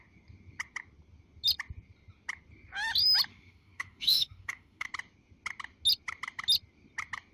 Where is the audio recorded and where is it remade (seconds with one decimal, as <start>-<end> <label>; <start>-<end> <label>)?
0.0-3.3 recorded; 3.3-4.9 remade; 4.9-7.3 recorded